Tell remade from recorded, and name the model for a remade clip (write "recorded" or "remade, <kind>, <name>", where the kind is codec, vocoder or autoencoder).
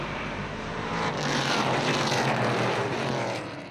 remade, vocoder, BigVGAN v2